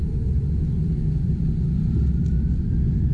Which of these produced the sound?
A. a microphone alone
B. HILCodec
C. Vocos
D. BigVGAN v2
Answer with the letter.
A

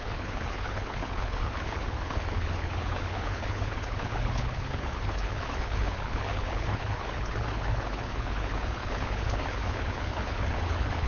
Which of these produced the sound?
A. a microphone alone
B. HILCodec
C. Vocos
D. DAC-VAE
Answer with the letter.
B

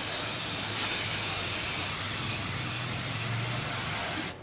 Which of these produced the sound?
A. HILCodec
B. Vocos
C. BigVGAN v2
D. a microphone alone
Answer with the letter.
D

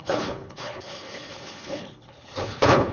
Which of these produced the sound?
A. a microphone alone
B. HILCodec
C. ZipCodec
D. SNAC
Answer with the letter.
B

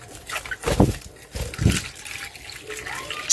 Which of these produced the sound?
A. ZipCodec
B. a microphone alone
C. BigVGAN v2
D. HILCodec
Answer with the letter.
B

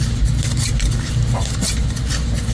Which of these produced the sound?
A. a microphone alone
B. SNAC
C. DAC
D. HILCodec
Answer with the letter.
A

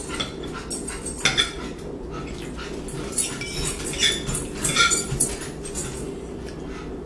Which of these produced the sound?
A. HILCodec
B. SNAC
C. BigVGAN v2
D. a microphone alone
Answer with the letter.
D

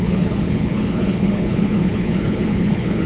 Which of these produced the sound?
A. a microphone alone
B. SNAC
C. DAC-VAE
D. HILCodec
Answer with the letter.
D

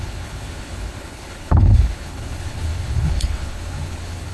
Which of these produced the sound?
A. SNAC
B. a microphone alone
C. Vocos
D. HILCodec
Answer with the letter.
D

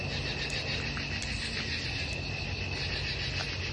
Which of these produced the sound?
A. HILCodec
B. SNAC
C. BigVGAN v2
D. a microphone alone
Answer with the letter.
D